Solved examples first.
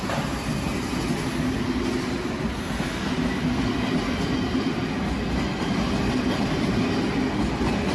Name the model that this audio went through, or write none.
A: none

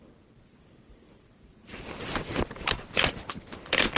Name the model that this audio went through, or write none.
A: none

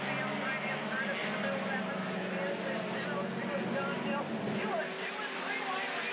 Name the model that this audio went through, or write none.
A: none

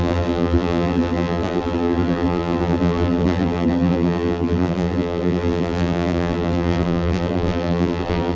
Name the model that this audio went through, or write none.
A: vocoder, BigVGAN v2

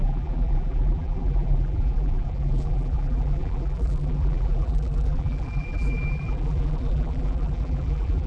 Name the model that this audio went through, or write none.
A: vocoder, BigVGAN v2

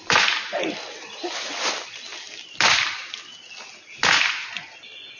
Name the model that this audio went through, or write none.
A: none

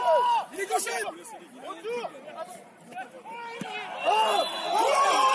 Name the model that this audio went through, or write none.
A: none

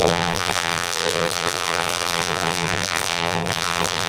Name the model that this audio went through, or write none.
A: vocoder, BigVGAN v2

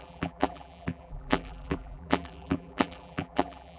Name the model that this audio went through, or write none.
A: vocoder, BigVGAN v2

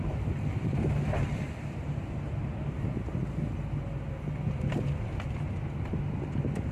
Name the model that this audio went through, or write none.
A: none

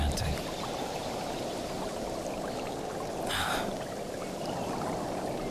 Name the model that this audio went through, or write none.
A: none